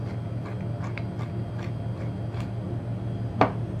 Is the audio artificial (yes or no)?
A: no